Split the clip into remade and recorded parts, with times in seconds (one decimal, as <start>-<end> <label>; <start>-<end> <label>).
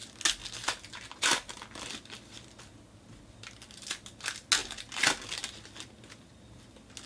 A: 0.0-7.1 recorded